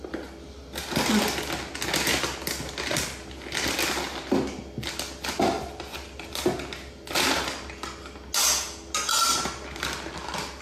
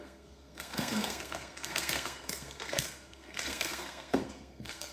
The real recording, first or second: first